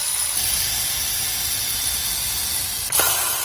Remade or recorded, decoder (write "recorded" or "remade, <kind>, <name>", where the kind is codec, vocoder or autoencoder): recorded